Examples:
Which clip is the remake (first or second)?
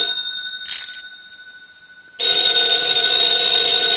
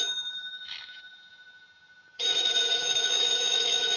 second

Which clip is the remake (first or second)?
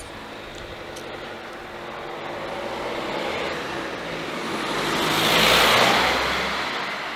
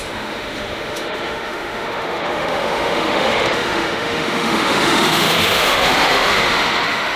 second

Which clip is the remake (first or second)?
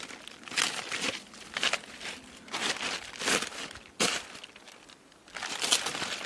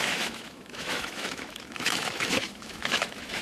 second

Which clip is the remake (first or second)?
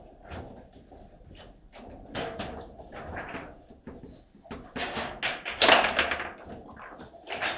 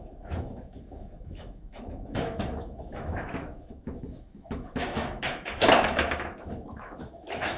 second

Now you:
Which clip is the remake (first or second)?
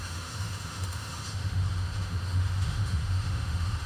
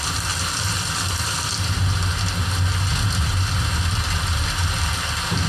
first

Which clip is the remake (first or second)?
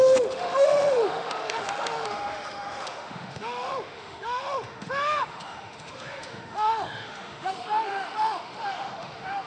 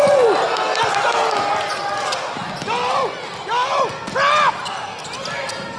first